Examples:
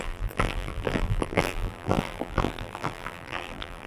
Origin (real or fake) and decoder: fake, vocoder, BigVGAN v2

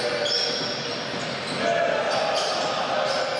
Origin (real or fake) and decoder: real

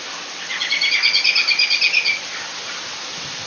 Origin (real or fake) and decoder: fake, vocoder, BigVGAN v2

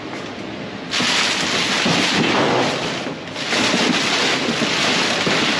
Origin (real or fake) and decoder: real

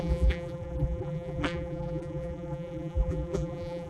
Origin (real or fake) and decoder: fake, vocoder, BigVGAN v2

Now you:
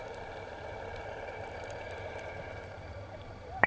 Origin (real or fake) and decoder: fake, vocoder, BigVGAN v2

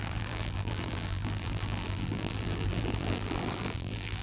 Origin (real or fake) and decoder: fake, vocoder, BigVGAN v2